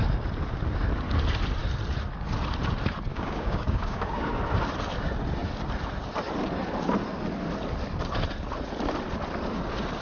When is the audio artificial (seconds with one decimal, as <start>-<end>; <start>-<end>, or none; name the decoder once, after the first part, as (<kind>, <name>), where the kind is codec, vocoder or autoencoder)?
3.1-4.3 (codec, DAC)